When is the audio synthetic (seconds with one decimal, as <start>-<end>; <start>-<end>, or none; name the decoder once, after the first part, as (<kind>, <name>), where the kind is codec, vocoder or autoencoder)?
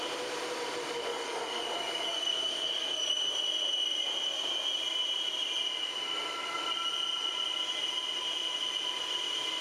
1.1-3.3 (codec, DAC)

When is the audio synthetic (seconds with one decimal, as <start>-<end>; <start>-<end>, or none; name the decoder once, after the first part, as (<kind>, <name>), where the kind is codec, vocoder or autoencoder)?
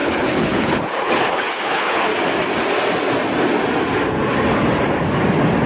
0.0-2.1 (codec, HILCodec)